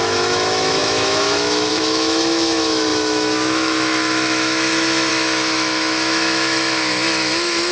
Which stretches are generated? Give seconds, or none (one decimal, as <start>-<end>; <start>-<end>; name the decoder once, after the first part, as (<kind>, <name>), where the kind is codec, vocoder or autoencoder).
0.0-7.7 (autoencoder, DAC-VAE)